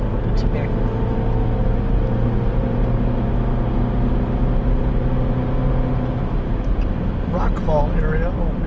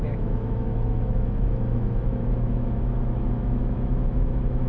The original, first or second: first